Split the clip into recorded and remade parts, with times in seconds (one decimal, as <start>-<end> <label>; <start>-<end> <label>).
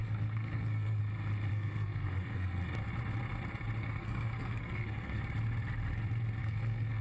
0.0-1.0 remade; 1.0-1.5 recorded; 1.5-2.6 remade; 2.6-3.8 recorded; 3.8-5.2 remade; 5.2-6.4 recorded; 6.4-7.0 remade